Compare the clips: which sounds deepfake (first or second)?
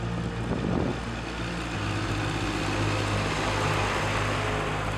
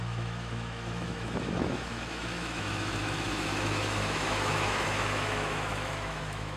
second